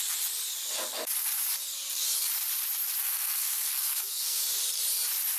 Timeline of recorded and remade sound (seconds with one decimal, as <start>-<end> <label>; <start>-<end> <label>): 0.0-3.0 recorded; 3.0-4.4 remade; 4.4-5.4 recorded